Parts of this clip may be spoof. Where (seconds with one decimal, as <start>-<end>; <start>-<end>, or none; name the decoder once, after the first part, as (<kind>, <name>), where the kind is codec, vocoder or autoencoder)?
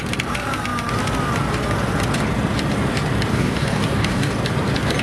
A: 3.3-4.3 (codec, DAC)